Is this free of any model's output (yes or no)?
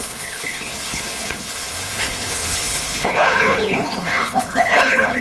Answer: no